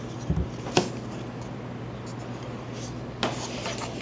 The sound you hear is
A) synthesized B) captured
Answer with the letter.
B